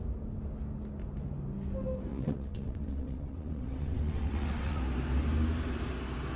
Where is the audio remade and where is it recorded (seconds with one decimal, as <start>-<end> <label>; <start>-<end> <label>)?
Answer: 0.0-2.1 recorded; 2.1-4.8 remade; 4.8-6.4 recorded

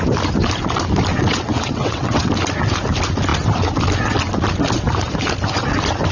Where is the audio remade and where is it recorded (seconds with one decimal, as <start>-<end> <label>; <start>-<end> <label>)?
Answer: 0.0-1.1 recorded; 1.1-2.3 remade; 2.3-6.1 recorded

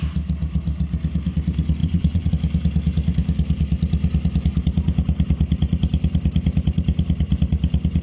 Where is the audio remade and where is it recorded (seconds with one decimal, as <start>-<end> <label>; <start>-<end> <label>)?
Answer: 0.0-1.8 recorded; 1.8-2.3 remade; 2.3-8.0 recorded

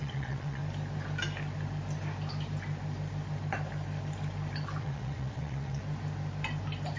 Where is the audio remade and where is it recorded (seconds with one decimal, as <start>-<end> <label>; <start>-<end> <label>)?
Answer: 0.0-0.6 remade; 0.6-4.8 recorded; 4.8-5.8 remade; 5.8-7.0 recorded

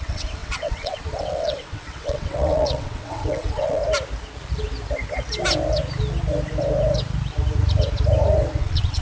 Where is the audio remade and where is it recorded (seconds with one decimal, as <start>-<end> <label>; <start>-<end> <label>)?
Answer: 0.0-3.8 remade; 3.8-8.6 recorded; 8.6-9.0 remade